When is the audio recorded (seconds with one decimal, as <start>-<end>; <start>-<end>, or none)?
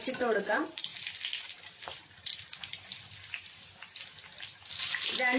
0.9-1.4; 2.3-4.8